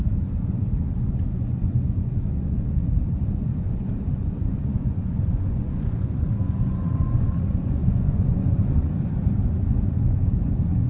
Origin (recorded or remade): remade